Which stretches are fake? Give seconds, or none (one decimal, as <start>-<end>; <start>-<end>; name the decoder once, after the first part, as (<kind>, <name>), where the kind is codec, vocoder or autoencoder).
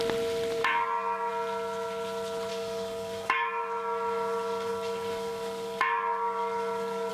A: 0.6-1.3 (codec, DAC); 2.5-7.1